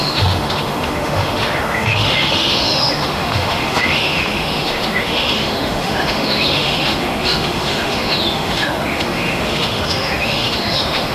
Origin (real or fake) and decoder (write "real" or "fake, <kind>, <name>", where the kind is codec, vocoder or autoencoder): fake, autoencoder, DAC-VAE